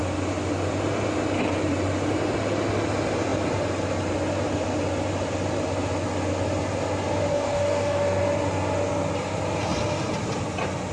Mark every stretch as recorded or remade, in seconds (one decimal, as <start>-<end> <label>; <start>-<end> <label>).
0.0-7.3 recorded; 7.3-8.2 remade; 8.2-10.9 recorded

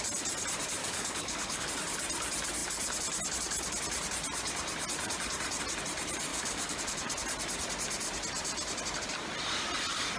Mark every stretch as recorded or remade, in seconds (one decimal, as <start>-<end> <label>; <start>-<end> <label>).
0.0-0.8 recorded; 0.8-1.7 remade; 1.7-6.3 recorded; 6.3-6.8 remade; 6.8-10.2 recorded